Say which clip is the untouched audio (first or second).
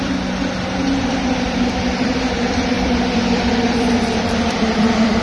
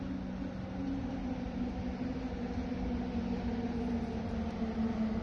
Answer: second